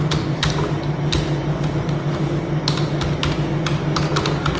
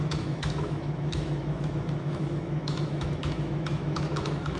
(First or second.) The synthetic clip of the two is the second